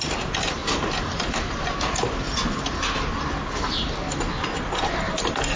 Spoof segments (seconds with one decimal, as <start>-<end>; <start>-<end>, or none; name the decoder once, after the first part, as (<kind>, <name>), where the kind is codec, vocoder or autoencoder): 0.0-0.6 (vocoder, BigVGAN v2); 3.2-3.8